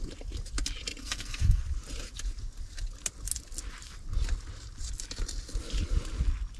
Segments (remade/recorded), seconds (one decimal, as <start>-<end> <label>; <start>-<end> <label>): 0.0-1.0 recorded; 1.0-1.6 remade; 1.6-6.6 recorded